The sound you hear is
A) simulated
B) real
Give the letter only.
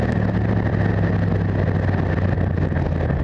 B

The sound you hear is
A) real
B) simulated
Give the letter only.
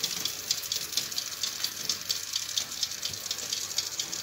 A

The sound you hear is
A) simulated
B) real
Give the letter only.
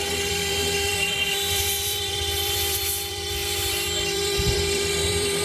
A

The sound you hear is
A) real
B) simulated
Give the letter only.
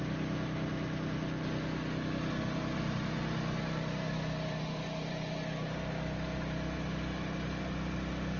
A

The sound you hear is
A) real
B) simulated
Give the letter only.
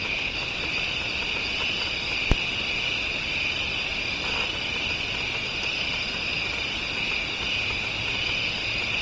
A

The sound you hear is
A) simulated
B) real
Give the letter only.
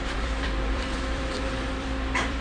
A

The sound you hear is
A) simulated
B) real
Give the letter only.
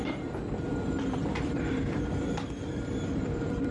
A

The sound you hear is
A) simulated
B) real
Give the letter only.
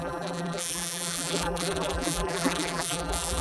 A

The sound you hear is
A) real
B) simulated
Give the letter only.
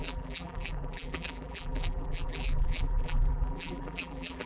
B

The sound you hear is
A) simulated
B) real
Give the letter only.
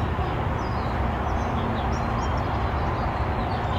B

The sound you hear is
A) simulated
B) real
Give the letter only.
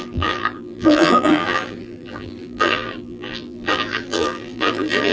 A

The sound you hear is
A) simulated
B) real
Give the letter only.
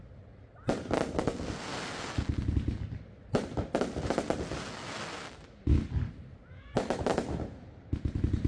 B